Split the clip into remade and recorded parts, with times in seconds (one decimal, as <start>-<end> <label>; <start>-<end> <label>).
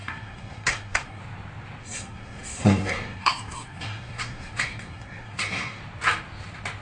0.0-1.2 remade; 1.2-1.8 recorded; 1.8-5.8 remade; 5.8-6.8 recorded